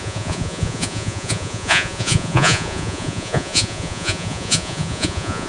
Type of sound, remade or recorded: remade